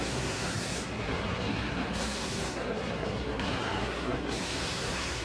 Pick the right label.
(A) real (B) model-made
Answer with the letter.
B